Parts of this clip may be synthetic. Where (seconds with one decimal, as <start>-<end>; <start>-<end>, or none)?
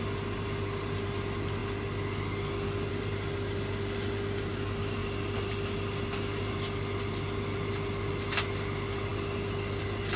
0.0-1.6; 2.9-5.0; 6.5-9.1